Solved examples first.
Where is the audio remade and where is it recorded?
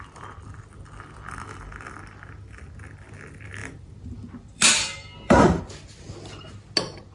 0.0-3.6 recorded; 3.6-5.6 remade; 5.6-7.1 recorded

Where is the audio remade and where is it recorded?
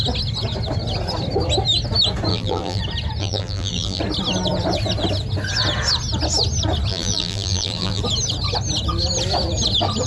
0.0-2.3 recorded; 2.3-2.8 remade; 2.8-3.2 recorded; 3.2-4.0 remade; 4.0-6.9 recorded; 6.9-8.0 remade; 8.0-10.1 recorded